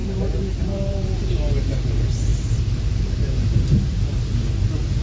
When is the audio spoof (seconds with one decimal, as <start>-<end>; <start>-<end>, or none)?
0.0-1.3; 2.3-3.5